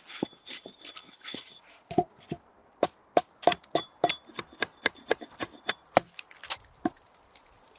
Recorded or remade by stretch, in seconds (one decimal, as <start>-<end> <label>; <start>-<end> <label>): 0.0-1.0 recorded; 1.0-2.2 remade; 2.2-7.8 recorded